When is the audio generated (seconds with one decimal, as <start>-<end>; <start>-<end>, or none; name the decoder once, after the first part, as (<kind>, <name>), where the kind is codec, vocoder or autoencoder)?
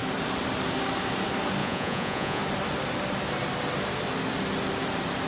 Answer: 1.6-2.4 (vocoder, Vocos)